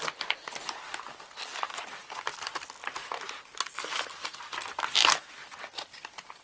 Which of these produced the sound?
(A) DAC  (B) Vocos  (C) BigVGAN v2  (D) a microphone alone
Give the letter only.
D